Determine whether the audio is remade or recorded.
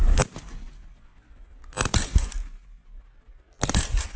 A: recorded